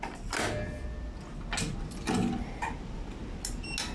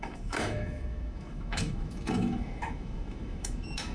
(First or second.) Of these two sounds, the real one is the first